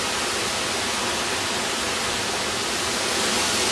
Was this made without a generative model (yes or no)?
yes